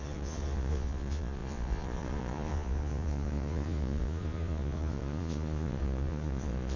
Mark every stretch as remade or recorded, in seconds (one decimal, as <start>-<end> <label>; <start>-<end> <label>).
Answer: 0.0-6.8 remade